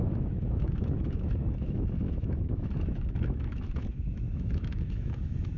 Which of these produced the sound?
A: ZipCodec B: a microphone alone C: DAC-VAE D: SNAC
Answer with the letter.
C